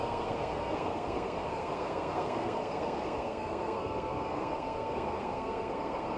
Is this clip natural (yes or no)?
no